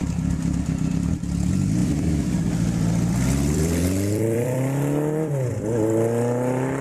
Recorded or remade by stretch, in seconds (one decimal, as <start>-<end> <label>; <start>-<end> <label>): 0.0-1.8 recorded; 1.8-5.5 remade; 5.5-6.8 recorded